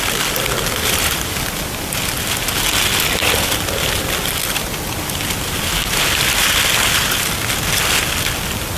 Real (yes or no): yes